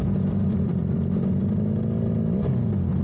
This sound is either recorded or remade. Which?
recorded